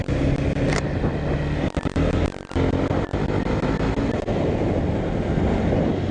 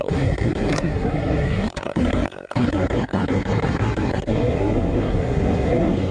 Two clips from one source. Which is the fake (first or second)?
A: second